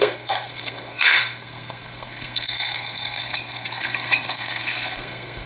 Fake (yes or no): yes